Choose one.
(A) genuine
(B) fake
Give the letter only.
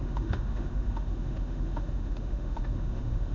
B